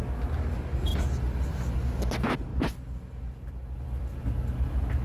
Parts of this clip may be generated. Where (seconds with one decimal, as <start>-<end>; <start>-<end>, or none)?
none